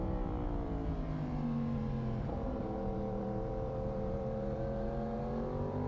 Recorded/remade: remade